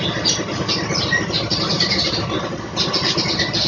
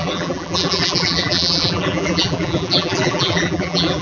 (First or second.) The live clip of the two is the first